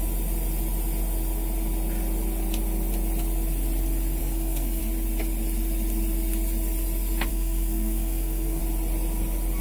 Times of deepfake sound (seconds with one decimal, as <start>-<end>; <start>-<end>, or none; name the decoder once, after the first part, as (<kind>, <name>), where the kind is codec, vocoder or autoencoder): 4.2-4.8 (codec, SNAC); 7.3-8.6